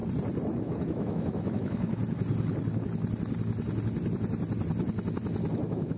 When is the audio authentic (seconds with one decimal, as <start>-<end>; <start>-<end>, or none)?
0.0-0.6; 2.0-5.6